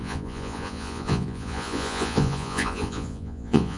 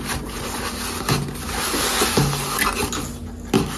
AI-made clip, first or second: first